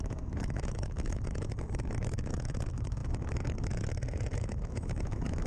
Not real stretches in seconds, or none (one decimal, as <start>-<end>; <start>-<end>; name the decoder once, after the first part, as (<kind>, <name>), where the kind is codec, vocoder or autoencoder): 0.0-5.5 (autoencoder, DAC-VAE)